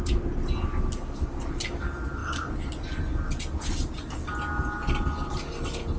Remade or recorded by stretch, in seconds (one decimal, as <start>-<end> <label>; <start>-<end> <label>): 0.0-6.0 recorded